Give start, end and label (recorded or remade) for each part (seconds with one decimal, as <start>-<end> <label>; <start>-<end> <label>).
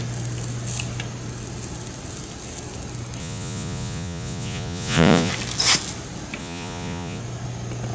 0.0-3.2 recorded; 3.2-5.3 remade; 5.3-6.4 recorded; 6.4-7.2 remade; 7.2-7.9 recorded